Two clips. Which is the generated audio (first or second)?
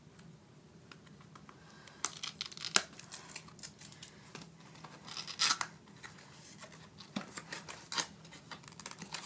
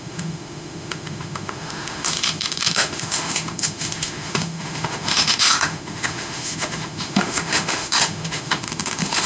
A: second